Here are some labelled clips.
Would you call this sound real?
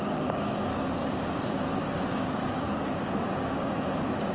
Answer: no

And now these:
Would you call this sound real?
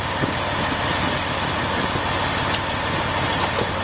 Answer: yes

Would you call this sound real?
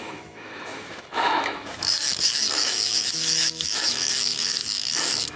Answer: no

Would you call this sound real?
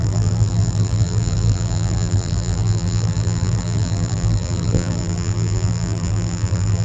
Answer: no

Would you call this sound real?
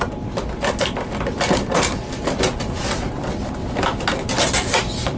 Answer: yes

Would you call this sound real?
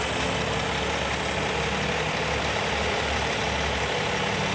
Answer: yes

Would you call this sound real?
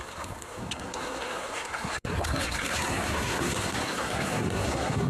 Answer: no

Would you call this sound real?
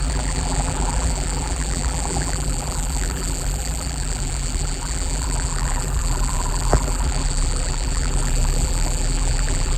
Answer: no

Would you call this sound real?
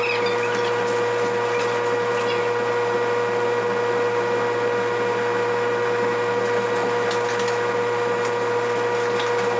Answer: yes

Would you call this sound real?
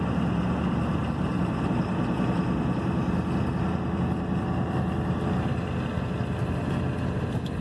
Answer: yes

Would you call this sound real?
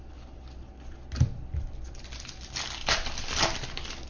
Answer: yes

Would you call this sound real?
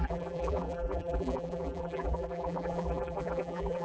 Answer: no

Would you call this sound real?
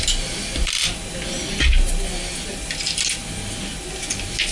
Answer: yes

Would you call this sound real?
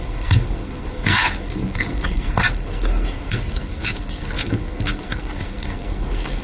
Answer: no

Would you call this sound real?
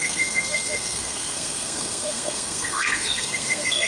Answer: no